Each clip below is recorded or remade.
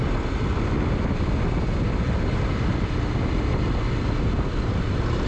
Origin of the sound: recorded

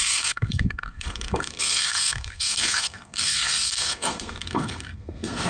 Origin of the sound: remade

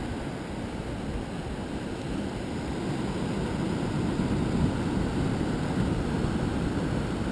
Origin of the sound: recorded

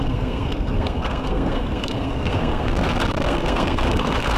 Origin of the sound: remade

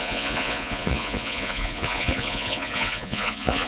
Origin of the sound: remade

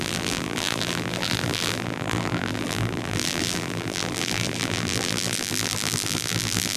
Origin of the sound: remade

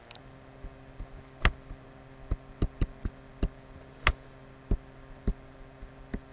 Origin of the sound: recorded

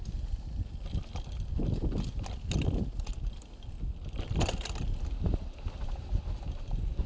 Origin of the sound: recorded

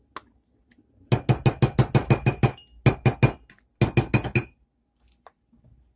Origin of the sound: recorded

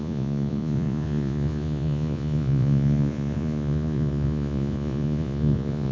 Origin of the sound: remade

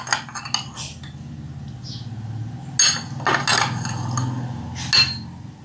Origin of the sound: recorded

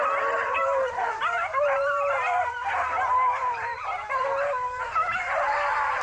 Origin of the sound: remade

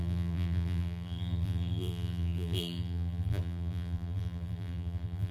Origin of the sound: remade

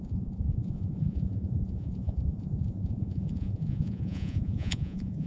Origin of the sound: remade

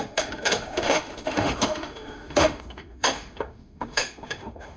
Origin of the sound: remade